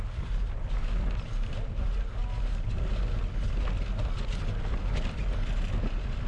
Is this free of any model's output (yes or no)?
yes